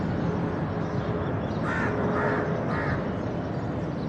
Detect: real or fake real